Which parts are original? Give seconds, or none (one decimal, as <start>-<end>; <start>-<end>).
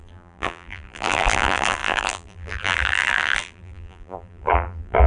none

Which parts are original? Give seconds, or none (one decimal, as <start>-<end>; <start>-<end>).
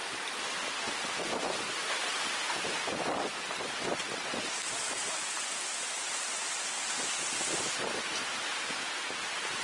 0.0-9.6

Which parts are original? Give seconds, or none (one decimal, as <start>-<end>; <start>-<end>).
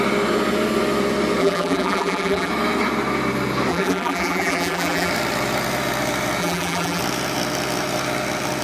0.0-1.4; 2.5-3.7; 5.1-6.4; 7.0-8.6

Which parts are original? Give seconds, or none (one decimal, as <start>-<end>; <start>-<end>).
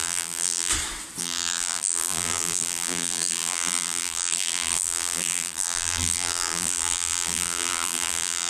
0.7-1.2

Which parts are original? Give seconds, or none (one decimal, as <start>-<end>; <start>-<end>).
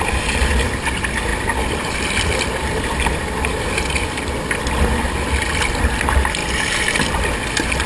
0.0-1.3; 3.7-6.4; 7.3-7.9